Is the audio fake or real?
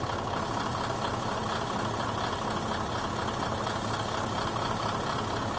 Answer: real